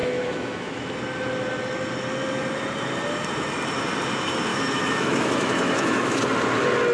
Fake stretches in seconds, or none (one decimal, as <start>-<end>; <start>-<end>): 0.0-0.9; 4.5-6.2